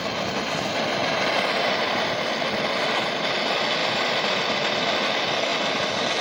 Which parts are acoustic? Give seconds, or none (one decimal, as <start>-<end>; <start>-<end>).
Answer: 0.0-3.8; 4.3-5.5